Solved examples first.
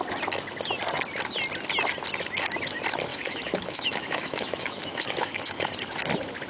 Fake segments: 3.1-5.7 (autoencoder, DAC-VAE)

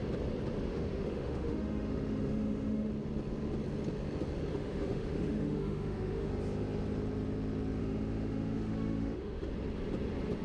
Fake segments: 0.7-2.9 (autoencoder, DAC-VAE); 4.5-6.3; 7.8-9.5

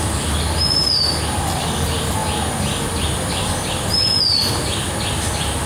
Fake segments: none

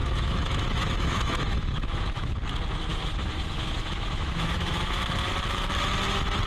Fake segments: 0.0-2.3 (autoencoder, DAC-VAE); 2.9-5.1

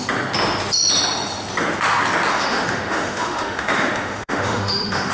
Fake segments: 2.3-5.1 (autoencoder, DAC-VAE)